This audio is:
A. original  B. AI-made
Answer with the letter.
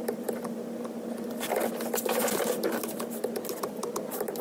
A